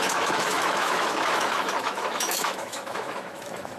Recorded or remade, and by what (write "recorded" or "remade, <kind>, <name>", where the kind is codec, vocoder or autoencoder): remade, autoencoder, DAC-VAE